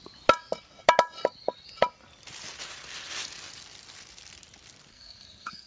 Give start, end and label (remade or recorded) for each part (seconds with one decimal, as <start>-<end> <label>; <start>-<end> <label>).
0.0-4.9 recorded; 4.9-5.7 remade